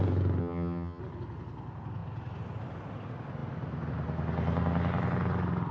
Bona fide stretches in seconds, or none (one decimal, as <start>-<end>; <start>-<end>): 0.0-0.4; 1.0-5.7